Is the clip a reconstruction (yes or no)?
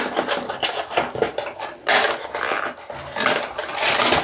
no